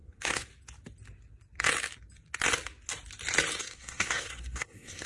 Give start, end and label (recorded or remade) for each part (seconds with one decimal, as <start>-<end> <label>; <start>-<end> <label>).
0.0-0.5 remade; 0.5-3.6 recorded; 3.6-5.1 remade